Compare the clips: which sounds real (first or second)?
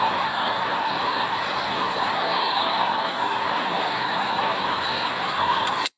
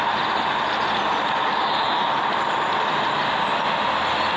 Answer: second